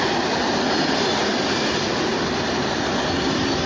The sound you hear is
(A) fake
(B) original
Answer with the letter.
B